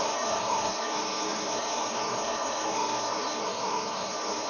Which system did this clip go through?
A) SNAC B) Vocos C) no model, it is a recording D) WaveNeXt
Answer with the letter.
A